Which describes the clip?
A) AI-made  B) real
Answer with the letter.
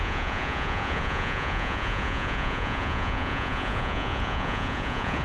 A